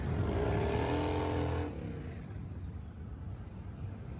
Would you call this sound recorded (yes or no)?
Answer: yes